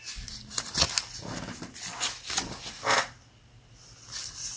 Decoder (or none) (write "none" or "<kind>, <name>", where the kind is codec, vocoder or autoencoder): none